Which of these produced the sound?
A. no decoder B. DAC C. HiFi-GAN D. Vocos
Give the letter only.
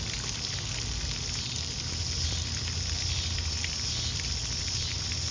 A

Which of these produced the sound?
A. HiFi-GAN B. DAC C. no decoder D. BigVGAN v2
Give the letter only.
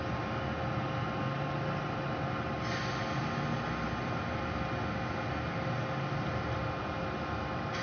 C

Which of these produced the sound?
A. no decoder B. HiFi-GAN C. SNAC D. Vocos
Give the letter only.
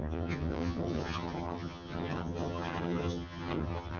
B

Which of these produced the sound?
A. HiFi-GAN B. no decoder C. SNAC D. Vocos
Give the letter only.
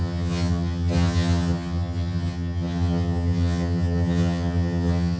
A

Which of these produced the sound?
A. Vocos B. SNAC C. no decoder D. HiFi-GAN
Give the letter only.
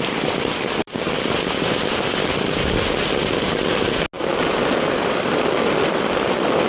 C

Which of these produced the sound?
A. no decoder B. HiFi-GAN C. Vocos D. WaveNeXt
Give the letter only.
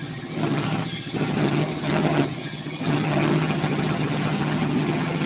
B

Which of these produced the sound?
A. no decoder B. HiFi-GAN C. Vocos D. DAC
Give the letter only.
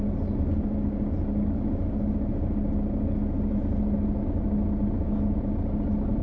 A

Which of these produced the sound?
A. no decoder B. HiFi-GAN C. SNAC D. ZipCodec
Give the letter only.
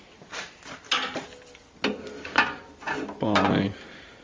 A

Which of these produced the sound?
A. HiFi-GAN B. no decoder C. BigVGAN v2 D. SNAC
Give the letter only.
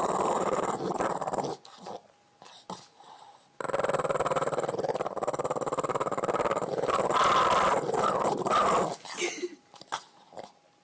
B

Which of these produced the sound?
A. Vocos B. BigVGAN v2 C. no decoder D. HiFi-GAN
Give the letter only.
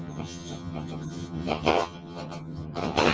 D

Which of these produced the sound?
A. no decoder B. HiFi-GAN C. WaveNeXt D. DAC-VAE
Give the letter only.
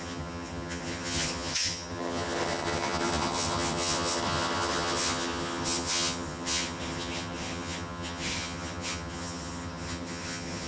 B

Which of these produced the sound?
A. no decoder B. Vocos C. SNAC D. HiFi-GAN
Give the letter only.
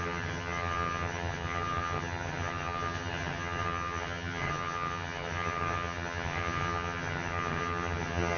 D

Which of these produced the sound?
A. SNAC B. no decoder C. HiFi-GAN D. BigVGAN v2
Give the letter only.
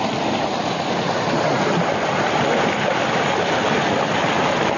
B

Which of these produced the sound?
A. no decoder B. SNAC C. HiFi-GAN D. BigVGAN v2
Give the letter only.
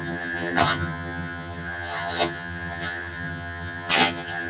C